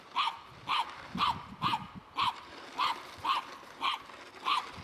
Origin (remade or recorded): recorded